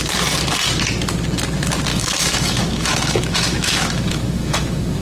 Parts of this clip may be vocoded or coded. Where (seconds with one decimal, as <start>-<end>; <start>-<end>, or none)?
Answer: 1.9-5.0